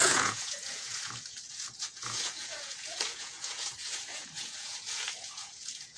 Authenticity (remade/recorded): remade